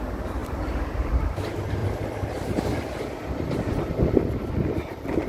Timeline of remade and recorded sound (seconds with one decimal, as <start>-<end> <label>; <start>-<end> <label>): 0.0-0.4 recorded; 0.4-1.1 remade; 1.1-1.8 recorded; 1.8-5.3 remade